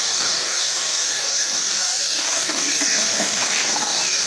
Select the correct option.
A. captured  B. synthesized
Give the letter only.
B